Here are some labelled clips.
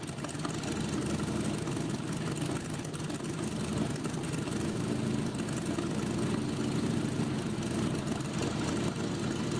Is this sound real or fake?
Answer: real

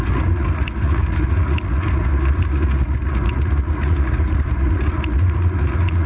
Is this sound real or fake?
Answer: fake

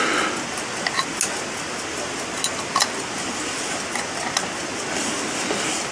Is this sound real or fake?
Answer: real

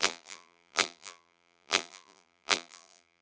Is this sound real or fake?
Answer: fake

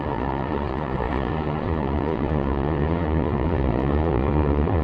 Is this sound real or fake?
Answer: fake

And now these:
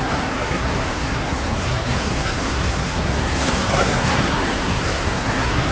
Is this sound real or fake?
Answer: fake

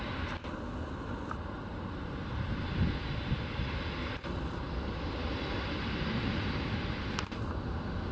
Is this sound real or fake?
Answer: real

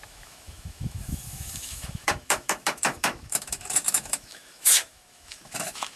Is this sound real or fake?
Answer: fake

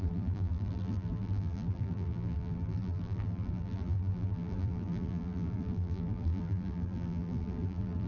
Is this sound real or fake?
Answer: fake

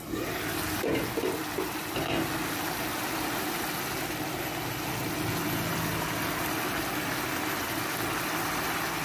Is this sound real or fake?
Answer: real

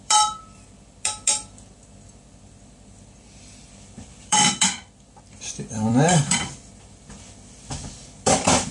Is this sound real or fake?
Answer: fake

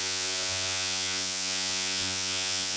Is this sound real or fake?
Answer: fake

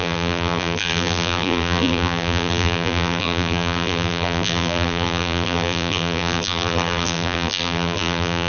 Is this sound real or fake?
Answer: fake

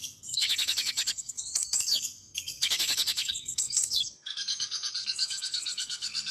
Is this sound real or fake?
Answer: fake